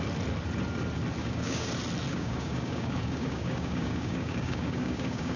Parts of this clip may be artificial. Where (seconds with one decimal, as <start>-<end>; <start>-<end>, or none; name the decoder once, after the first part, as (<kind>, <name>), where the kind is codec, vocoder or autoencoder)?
1.2-1.7 (codec, DAC); 2.1-5.4

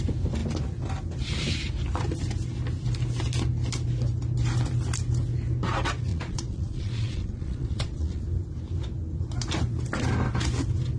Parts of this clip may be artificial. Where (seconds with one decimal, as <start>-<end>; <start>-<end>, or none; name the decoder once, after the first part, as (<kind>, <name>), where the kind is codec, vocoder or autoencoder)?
6.1-8.2 (vocoder, Vocos)

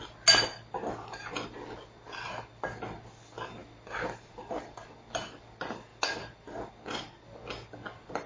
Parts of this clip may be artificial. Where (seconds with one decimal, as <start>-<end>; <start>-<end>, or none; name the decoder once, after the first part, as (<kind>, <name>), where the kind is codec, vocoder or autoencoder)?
none

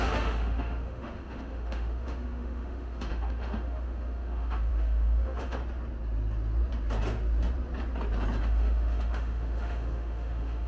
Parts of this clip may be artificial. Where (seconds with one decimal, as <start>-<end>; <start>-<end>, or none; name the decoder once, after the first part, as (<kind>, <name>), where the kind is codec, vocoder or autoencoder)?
0.0-5.6 (autoencoder, DAC-VAE); 8.4-10.7

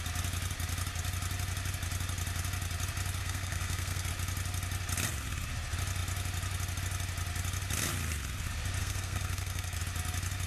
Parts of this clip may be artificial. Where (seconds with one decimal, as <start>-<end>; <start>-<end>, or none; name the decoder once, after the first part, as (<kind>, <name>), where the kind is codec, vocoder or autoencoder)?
3.2-4.1 (codec, SNAC); 8.8-9.8

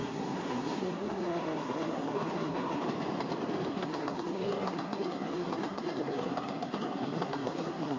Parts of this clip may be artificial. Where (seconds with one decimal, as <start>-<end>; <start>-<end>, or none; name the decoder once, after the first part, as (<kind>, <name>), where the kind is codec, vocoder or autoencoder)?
0.0-2.8 (codec, SNAC); 3.7-8.0